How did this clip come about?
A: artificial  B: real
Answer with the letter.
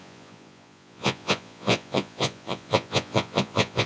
A